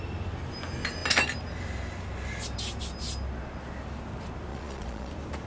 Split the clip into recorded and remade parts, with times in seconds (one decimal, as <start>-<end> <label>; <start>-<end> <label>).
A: 0.0-4.5 recorded; 4.5-5.1 remade; 5.1-5.5 recorded

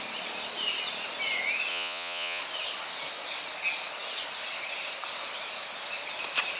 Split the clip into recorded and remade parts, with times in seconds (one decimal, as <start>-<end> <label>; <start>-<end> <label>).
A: 0.0-1.7 recorded; 1.7-2.4 remade; 2.4-6.6 recorded

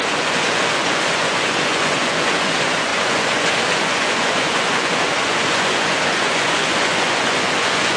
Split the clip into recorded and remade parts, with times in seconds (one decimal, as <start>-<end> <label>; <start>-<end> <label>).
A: 0.0-8.0 remade

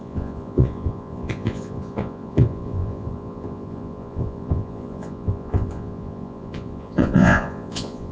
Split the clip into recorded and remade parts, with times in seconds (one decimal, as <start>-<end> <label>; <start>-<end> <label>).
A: 0.0-8.1 remade

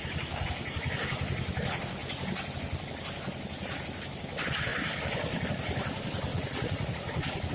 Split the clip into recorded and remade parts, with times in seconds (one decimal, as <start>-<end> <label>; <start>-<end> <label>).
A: 0.0-6.3 recorded; 6.3-7.5 remade